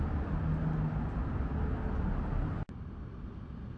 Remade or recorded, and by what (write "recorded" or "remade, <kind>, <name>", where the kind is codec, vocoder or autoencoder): recorded